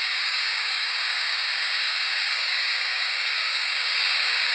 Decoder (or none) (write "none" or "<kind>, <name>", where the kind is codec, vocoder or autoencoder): codec, DAC